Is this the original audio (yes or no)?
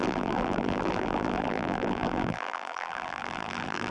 no